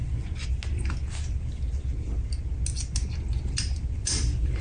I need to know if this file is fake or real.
real